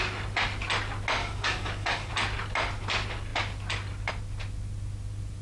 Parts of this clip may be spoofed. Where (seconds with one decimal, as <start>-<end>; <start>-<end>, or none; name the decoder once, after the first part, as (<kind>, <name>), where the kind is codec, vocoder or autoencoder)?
1.2-2.1 (codec, DAC)